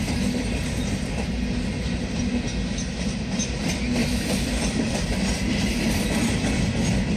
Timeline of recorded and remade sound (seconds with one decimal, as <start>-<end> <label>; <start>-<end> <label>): 0.0-4.0 recorded; 4.0-6.6 remade; 6.6-7.2 recorded